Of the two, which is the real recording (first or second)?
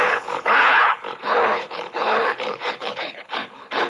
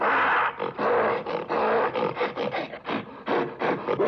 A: second